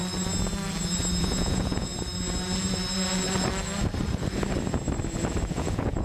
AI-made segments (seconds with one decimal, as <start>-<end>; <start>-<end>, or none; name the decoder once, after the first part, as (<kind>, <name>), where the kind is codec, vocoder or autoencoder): 1.2-1.9 (vocoder, Vocos); 5.5-6.0